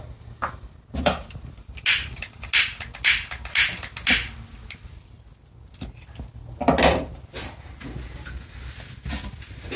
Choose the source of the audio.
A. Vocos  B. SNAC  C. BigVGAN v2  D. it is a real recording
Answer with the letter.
D